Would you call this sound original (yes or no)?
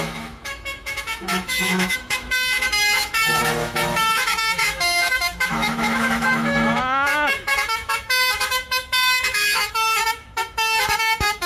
no